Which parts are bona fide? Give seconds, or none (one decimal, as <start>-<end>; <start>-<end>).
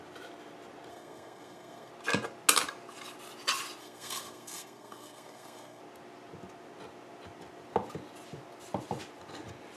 0.0-0.9; 1.9-3.8; 5.8-9.8